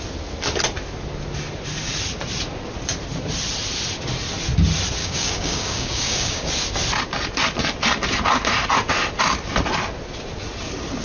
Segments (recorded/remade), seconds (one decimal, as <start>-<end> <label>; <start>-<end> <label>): 0.0-5.0 recorded; 5.0-6.5 remade; 6.5-11.0 recorded